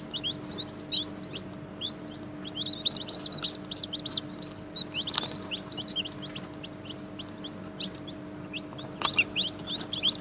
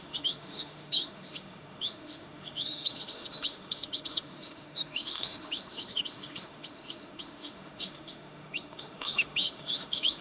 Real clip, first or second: first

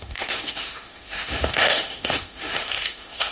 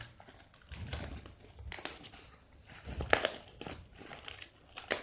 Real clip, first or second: second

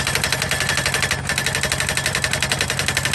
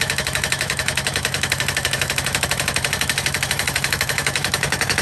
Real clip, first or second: first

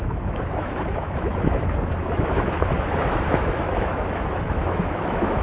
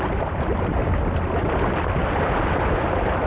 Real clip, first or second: second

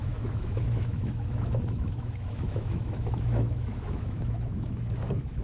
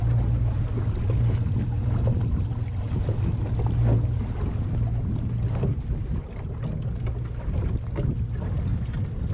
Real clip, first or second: second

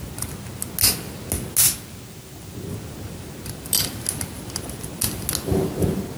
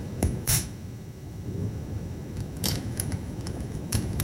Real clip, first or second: first